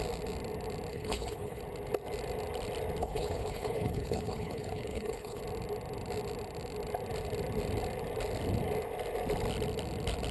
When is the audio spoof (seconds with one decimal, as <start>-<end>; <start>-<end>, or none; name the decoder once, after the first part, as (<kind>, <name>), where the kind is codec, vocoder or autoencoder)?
0.9-1.6 (codec, HILCodec); 3.0-5.4